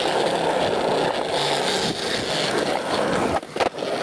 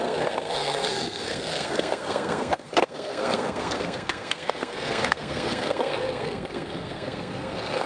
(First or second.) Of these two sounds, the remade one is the second